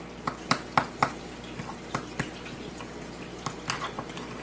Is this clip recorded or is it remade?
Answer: recorded